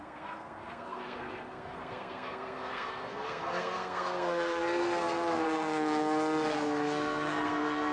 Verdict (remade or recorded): remade